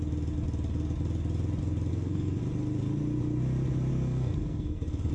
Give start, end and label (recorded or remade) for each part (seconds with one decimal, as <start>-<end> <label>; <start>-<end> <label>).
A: 0.0-1.9 recorded; 1.9-2.4 remade; 2.4-3.9 recorded; 3.9-5.1 remade